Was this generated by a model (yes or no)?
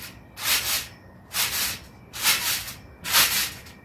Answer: no